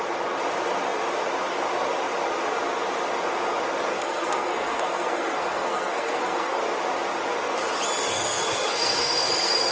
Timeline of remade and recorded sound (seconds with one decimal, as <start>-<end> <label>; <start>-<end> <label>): 0.0-3.9 recorded; 3.9-6.6 remade; 6.6-8.0 recorded; 8.0-9.7 remade